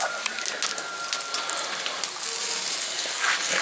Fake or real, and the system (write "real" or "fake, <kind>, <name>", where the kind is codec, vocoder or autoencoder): real